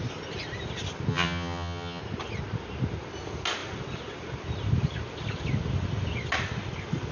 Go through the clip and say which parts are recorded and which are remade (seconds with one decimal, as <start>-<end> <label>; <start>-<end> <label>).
0.0-1.1 recorded; 1.1-2.0 remade; 2.0-7.1 recorded

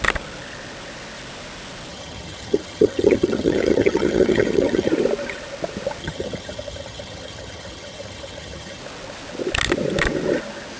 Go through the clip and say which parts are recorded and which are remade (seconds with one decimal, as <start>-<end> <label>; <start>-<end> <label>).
0.0-1.9 recorded; 1.9-4.9 remade; 4.9-6.0 recorded; 6.0-8.8 remade; 8.8-10.8 recorded

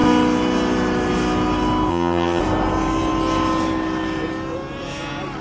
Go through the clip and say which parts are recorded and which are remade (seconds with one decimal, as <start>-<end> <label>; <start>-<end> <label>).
0.0-1.9 recorded; 1.9-2.4 remade; 2.4-5.4 recorded

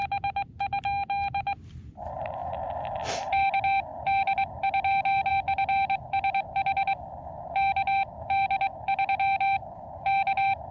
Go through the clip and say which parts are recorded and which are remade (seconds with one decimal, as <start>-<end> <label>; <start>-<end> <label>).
0.0-10.7 recorded

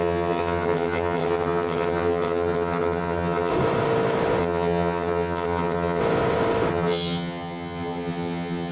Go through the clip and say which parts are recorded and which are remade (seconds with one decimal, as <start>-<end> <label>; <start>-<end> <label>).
0.0-3.5 remade; 3.5-4.4 recorded; 4.4-6.0 remade; 6.0-6.7 recorded; 6.7-8.7 remade

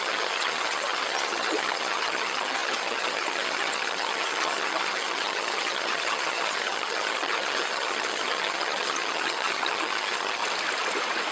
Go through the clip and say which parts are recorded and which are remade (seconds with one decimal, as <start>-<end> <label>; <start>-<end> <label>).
0.0-10.4 remade; 10.4-11.3 recorded

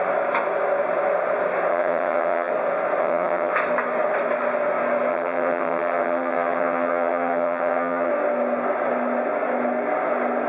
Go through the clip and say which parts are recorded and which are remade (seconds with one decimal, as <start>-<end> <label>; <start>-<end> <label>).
0.0-1.7 recorded; 1.7-2.5 remade; 2.5-3.0 recorded; 3.0-3.5 remade; 3.5-5.1 recorded; 5.1-8.1 remade; 8.1-10.5 recorded

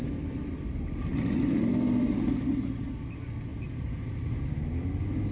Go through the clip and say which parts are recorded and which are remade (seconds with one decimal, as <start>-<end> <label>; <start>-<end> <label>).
0.0-5.3 recorded